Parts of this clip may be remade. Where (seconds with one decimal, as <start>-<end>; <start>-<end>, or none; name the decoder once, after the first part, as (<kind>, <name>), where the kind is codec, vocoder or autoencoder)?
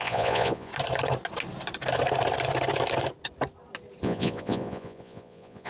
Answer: 0.0-0.7 (vocoder, Vocos); 4.0-5.7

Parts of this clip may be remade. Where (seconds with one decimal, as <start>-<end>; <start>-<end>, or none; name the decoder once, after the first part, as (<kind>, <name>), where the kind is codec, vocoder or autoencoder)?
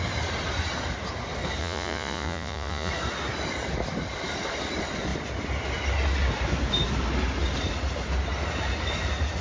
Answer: 1.6-2.9 (vocoder, Vocos)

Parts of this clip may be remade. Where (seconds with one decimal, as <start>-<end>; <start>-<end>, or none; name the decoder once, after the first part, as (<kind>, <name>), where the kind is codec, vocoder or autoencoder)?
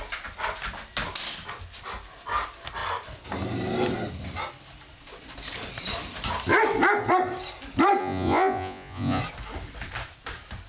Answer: 8.0-9.2 (vocoder, Vocos)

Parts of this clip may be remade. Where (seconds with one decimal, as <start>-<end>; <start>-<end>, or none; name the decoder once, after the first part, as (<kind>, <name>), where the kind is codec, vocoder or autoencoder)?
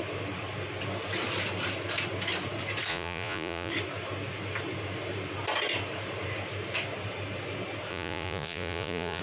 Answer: 2.9-3.7 (vocoder, Vocos); 7.9-9.2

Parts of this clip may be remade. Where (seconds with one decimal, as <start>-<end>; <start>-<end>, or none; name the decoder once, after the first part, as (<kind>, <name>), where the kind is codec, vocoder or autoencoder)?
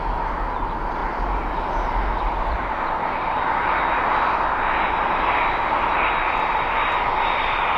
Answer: none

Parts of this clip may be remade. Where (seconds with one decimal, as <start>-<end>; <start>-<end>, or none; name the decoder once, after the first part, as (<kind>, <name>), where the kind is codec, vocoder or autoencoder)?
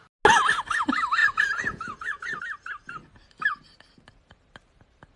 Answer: 1.2-2.4 (vocoder, Vocos)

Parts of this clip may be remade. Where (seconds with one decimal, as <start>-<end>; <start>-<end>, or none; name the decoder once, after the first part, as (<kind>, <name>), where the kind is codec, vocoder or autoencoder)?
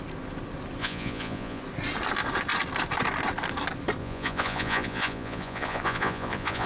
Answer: 0.8-1.6 (vocoder, Vocos); 4.0-6.7